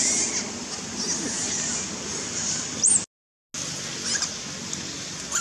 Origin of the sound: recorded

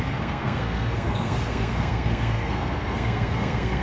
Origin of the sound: remade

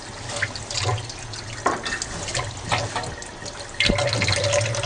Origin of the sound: recorded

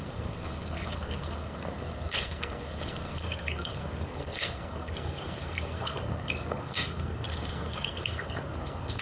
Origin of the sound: remade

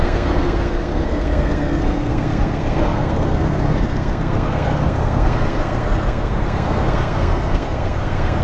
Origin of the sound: remade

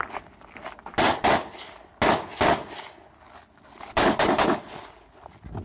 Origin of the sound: recorded